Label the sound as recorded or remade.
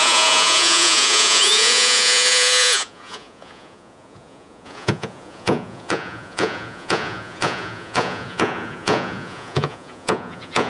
remade